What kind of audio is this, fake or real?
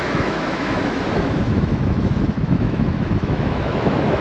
fake